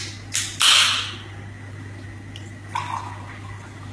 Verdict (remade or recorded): recorded